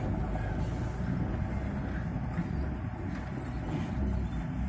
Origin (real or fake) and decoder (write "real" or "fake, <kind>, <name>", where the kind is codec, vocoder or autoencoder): real